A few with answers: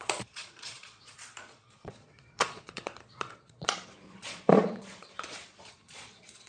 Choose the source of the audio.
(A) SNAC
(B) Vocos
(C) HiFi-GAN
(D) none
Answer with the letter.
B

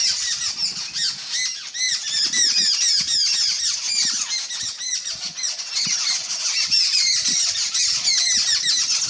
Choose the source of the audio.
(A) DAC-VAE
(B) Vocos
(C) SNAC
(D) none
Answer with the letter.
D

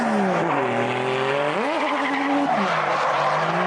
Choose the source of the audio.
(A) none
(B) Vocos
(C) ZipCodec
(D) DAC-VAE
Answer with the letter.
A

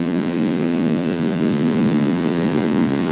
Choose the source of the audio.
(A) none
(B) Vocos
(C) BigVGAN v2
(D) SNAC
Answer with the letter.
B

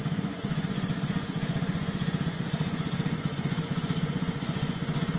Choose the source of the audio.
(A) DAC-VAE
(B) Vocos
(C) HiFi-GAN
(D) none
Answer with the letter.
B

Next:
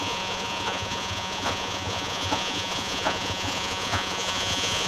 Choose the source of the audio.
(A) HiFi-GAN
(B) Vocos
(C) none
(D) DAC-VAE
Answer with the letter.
B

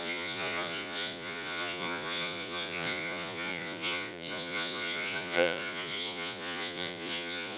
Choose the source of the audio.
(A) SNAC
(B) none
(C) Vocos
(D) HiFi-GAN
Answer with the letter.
C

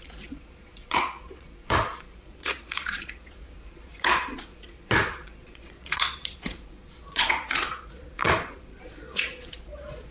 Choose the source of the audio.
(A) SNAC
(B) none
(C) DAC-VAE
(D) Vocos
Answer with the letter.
D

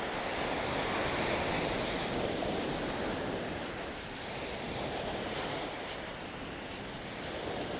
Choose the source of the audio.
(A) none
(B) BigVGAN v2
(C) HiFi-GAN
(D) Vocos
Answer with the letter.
A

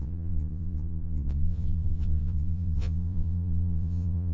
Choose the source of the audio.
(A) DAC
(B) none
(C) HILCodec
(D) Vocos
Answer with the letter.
D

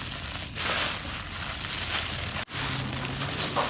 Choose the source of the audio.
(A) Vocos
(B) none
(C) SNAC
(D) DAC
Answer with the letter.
B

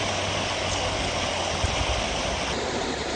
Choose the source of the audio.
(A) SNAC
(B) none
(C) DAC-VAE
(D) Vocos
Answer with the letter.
B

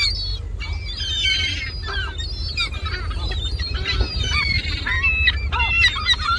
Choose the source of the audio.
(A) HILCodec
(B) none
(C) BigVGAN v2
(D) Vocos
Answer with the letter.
B